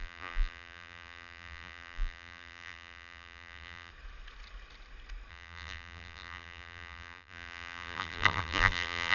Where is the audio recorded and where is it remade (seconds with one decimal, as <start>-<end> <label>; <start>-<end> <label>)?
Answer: 0.0-3.9 remade; 3.9-5.3 recorded; 5.3-9.1 remade